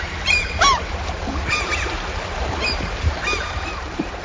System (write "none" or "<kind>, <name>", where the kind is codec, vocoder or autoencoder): vocoder, BigVGAN v2